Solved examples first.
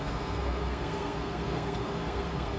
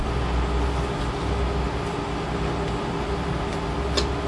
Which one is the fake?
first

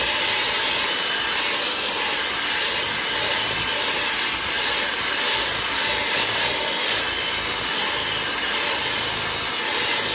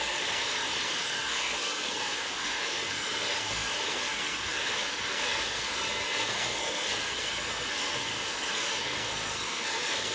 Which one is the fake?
second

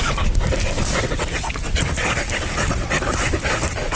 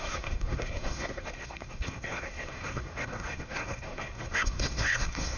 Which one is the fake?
second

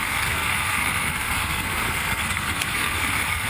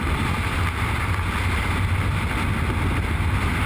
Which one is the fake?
first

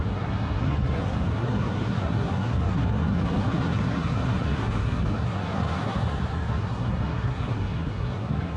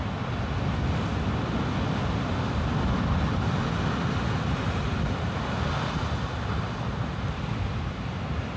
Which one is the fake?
first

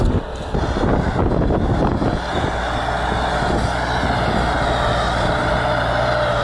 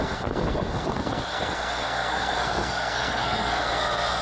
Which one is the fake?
second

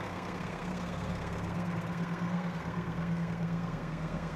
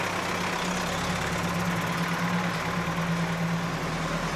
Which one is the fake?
first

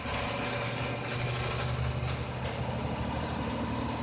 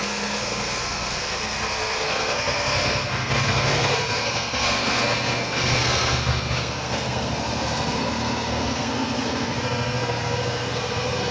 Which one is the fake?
second